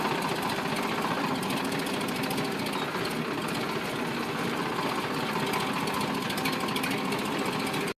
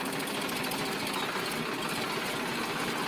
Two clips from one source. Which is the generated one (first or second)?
second